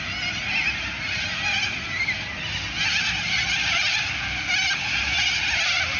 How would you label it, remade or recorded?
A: recorded